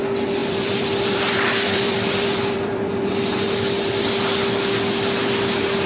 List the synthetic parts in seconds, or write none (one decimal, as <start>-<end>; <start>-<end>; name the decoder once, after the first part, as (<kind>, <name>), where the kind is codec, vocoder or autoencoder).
0.4-3.1 (vocoder, BigVGAN v2)